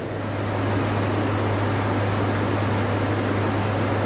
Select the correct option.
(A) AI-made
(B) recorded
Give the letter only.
B